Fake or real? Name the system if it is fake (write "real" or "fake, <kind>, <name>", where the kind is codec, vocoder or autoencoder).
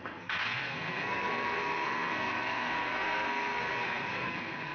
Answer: fake, codec, SNAC